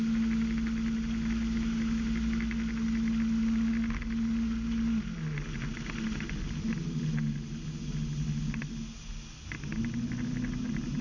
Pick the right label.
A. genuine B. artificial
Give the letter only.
A